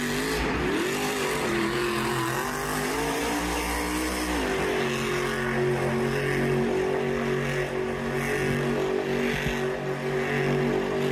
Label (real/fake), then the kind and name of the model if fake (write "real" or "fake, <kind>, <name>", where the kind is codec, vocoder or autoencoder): real